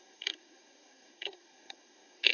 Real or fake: fake